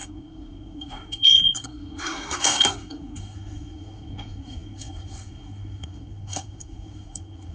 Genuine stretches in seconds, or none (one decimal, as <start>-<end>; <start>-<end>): none